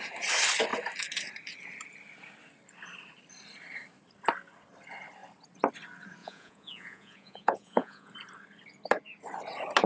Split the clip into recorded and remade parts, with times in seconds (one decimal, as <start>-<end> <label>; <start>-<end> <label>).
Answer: 0.0-6.2 recorded; 6.2-8.1 remade; 8.1-9.9 recorded